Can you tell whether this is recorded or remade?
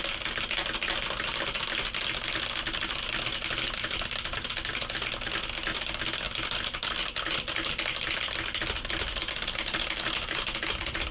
recorded